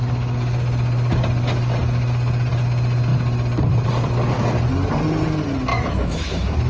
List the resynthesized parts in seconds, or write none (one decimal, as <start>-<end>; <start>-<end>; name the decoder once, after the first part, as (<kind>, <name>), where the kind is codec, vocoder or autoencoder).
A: 5.7-6.7 (autoencoder, DAC-VAE)